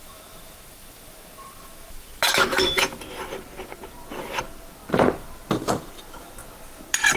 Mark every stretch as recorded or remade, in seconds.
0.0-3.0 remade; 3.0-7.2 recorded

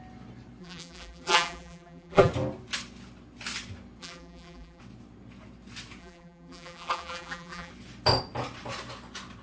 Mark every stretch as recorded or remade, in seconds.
0.0-0.6 recorded; 0.6-2.3 remade; 2.3-4.0 recorded; 4.0-4.8 remade; 4.8-6.0 recorded; 6.0-7.7 remade; 7.7-9.4 recorded